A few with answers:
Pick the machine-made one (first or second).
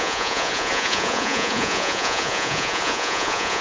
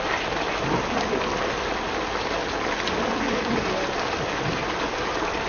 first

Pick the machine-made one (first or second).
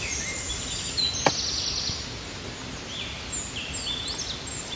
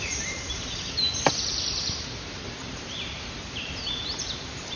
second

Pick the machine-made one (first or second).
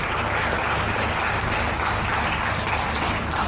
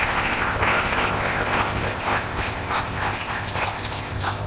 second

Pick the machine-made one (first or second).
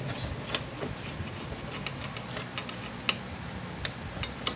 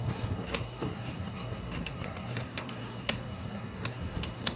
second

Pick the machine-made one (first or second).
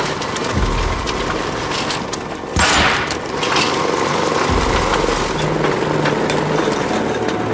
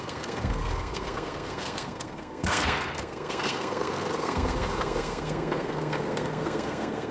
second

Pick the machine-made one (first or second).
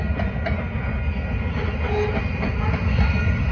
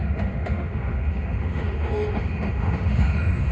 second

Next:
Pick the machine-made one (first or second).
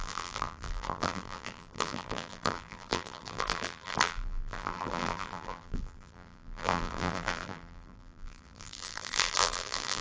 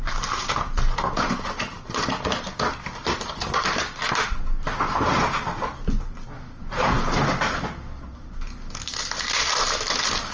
first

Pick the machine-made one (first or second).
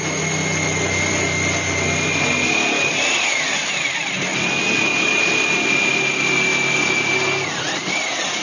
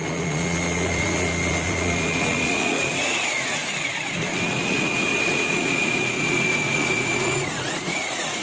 second